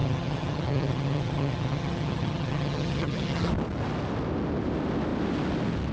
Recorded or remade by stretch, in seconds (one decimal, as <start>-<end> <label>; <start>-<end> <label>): 0.0-3.5 remade; 3.5-5.9 recorded